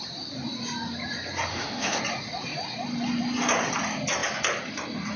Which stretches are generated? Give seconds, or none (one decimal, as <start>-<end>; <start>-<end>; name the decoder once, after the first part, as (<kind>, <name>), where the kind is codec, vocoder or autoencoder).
1.5-2.0 (autoencoder, DAC-VAE)